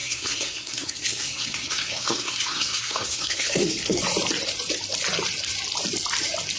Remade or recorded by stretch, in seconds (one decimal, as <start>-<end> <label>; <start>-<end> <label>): 0.0-4.0 remade; 4.0-6.6 recorded